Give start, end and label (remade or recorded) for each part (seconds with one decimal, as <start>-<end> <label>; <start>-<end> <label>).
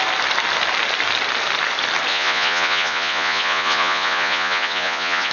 0.0-2.1 recorded; 2.1-5.3 remade